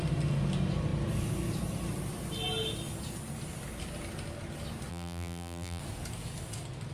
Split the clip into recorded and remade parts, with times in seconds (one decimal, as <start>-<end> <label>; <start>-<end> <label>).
0.0-4.9 recorded; 4.9-5.8 remade; 5.8-6.9 recorded